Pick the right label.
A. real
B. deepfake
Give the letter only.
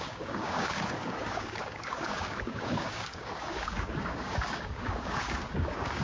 B